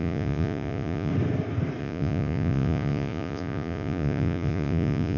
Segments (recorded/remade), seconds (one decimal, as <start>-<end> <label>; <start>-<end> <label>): 0.0-1.1 remade; 1.1-1.8 recorded; 1.8-5.2 remade